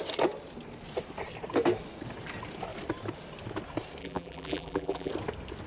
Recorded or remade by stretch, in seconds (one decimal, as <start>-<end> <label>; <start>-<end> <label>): 0.0-4.0 recorded; 4.0-5.1 remade; 5.1-5.7 recorded